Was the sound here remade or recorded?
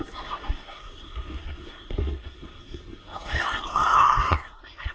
remade